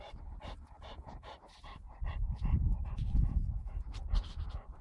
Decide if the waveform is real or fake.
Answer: fake